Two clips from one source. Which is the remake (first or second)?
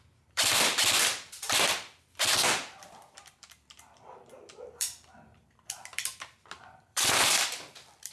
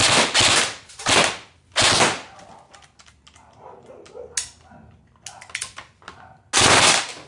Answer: first